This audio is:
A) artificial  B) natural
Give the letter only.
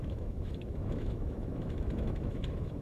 A